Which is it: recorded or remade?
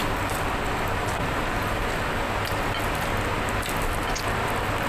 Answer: recorded